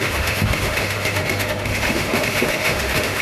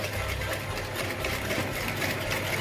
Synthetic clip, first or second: first